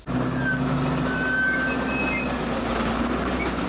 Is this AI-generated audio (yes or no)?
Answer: no